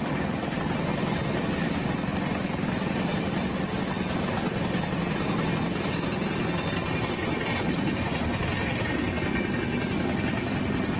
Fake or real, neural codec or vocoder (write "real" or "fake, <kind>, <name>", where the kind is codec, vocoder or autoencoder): real